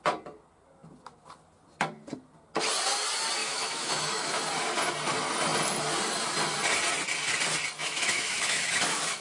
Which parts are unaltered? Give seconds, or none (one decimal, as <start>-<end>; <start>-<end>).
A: 0.0-3.4; 4.4-7.8